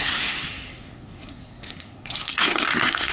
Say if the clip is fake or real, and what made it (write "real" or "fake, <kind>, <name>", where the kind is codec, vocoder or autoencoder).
fake, codec, SNAC